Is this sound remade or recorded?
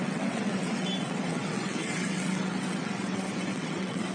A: remade